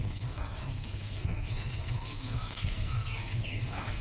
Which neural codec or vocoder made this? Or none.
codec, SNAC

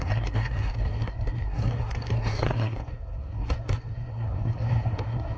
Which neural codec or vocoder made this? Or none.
codec, SNAC